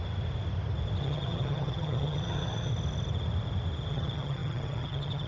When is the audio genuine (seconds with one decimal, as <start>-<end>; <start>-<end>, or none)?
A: 0.0-1.0; 2.7-3.9